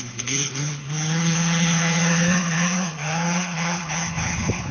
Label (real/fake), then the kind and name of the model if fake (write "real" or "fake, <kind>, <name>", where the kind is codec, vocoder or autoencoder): fake, codec, HILCodec